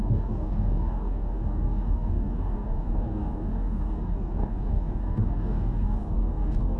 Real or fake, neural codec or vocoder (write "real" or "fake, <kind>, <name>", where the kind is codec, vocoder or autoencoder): fake, codec, DAC